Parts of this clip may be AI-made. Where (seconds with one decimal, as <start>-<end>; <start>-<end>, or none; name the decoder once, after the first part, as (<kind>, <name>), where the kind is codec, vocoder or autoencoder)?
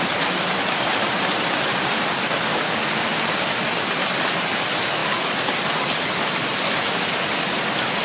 0.9-4.2 (vocoder, BigVGAN v2)